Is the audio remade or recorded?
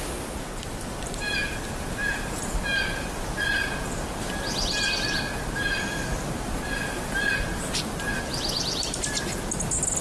recorded